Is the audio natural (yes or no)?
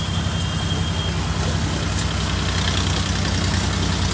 yes